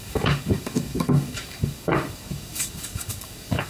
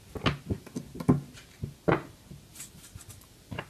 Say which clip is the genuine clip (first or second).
second